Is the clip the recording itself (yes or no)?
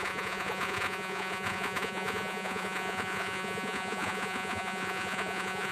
no